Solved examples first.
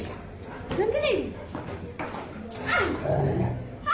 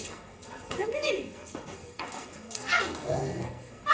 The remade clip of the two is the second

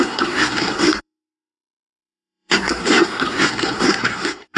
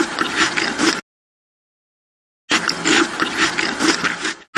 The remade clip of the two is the first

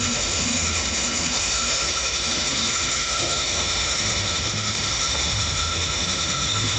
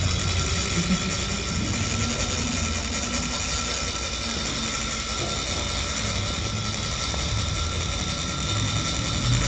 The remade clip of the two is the first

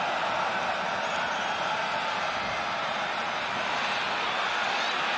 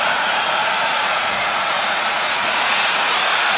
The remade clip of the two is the second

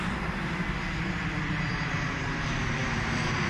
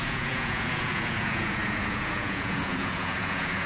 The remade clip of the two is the second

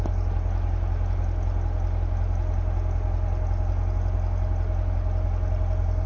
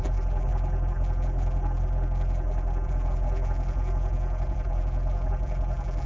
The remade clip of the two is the second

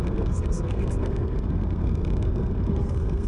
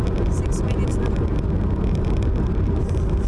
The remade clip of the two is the first